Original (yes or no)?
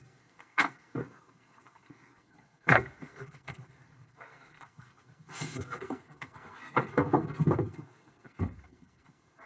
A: no